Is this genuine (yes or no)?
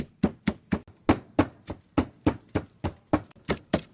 yes